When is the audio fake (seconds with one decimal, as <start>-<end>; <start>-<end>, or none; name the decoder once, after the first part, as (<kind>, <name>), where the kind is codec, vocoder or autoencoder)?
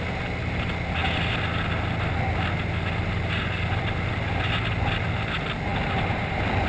none